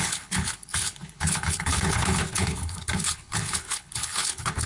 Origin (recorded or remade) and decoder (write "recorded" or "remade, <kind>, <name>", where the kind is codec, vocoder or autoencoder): remade, codec, HILCodec